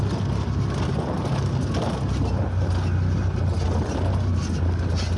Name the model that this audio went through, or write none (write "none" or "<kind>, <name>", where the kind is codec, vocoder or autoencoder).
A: none